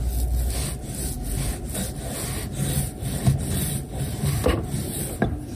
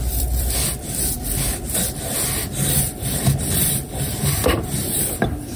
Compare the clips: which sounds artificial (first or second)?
second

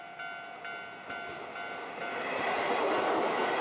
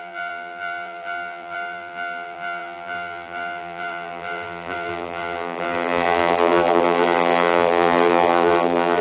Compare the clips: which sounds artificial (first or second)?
second